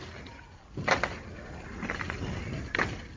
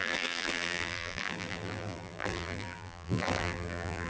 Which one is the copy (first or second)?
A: second